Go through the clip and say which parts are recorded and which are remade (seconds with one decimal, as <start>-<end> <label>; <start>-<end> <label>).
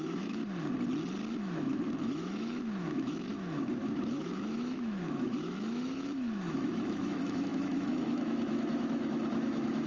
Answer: 0.0-0.4 remade; 0.4-1.4 recorded; 1.4-9.9 remade